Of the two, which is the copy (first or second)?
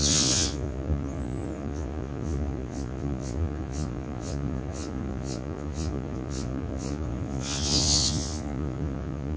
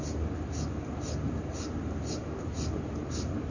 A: first